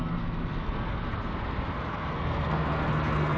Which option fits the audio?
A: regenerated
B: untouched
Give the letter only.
A